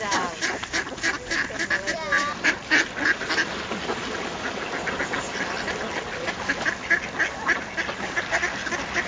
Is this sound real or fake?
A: real